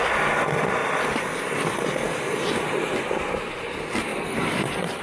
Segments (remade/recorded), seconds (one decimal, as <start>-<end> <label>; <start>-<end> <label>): 0.0-5.0 recorded